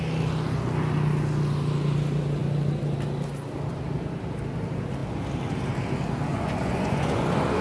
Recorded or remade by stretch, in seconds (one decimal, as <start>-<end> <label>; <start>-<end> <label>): 0.0-6.3 recorded; 6.3-7.6 remade